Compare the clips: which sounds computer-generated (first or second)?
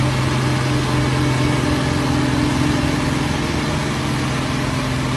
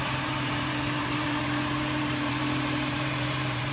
second